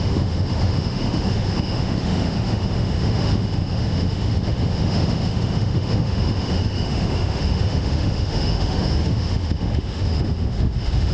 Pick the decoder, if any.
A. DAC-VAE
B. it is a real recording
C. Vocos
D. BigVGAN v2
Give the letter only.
A